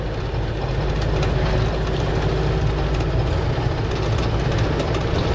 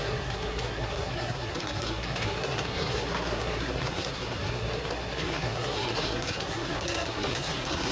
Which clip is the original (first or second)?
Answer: first